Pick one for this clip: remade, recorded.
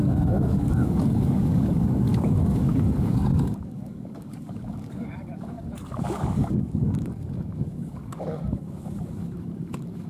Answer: remade